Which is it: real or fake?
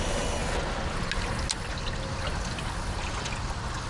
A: real